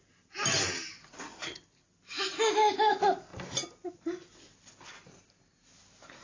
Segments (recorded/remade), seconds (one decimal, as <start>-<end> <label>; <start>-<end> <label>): 0.0-6.2 recorded